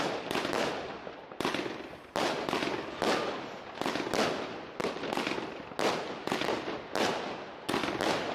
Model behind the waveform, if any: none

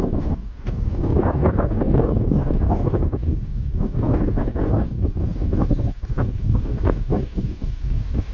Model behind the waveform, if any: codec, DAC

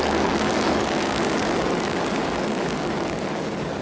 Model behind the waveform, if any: codec, DAC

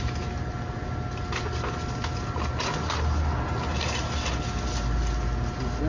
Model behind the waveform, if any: none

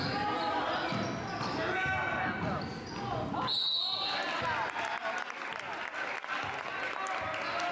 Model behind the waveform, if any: none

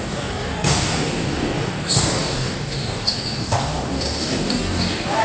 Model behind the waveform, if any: codec, DAC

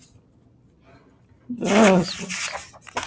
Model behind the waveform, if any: none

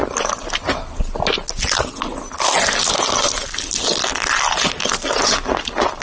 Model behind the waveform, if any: none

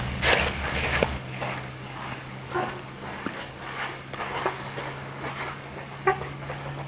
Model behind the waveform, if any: codec, DAC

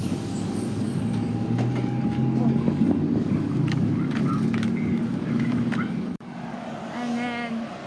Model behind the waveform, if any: codec, DAC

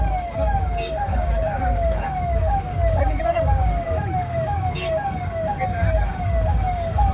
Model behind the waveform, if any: codec, DAC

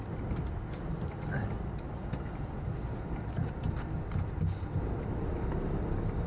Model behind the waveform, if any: none